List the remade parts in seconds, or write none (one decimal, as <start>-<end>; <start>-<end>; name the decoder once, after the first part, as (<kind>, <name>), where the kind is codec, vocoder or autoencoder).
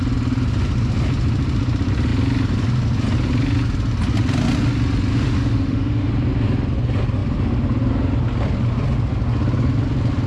5.1-6.1 (autoencoder, DAC-VAE)